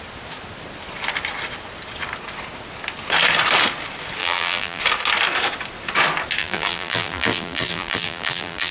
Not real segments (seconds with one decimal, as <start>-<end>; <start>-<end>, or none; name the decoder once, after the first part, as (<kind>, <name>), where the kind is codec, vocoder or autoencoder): 4.2-4.8 (vocoder, BigVGAN v2); 6.4-8.7

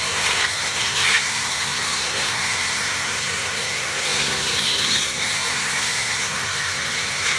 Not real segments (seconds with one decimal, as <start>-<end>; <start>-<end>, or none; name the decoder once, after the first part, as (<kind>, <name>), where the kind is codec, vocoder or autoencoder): 0.0-7.4 (codec, SNAC)

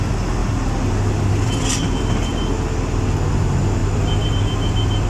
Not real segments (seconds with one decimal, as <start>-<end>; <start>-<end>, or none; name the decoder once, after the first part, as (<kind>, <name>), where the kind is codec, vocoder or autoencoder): 0.0-0.4 (vocoder, BigVGAN v2); 1.3-2.3; 3.3-5.1

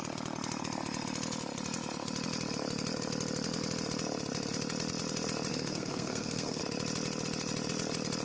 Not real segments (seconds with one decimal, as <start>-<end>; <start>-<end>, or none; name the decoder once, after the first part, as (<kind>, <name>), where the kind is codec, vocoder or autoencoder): 5.5-6.6 (codec, SNAC)

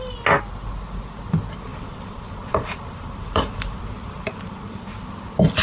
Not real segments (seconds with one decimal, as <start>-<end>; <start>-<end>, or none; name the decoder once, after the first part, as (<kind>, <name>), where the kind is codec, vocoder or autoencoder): 1.7-5.1 (vocoder, BigVGAN v2)

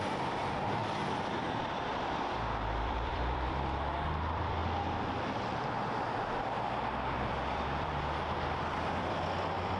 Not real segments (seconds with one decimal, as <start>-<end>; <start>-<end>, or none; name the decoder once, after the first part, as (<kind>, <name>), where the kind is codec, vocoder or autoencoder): 0.0-0.8 (vocoder, BigVGAN v2); 1.6-4.6; 7.1-9.8

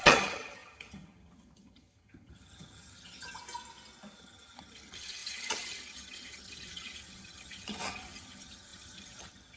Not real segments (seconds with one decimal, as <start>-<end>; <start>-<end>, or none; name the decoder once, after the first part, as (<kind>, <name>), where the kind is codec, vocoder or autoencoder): 0.0-3.4 (vocoder, HiFi-GAN); 4.2-9.6

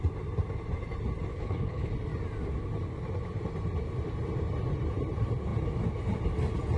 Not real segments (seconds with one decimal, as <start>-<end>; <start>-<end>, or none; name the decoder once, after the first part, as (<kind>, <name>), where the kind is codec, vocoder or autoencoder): 1.3-1.9 (codec, HILCodec)